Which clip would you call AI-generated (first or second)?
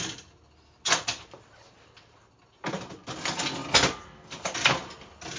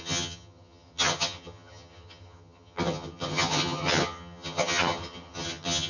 second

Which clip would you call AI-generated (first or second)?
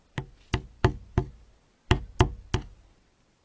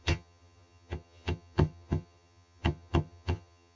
second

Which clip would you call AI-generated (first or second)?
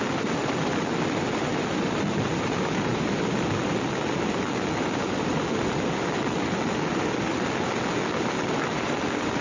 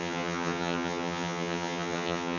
second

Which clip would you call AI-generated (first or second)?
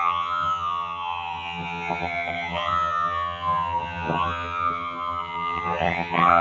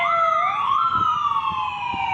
first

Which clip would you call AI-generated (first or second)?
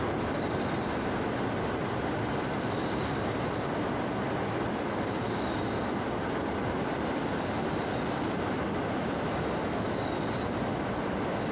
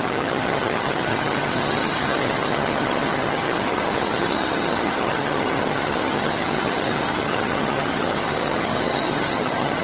second